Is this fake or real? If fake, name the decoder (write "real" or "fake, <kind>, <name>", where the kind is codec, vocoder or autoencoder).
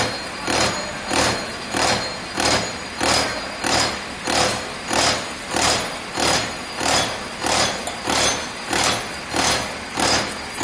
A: real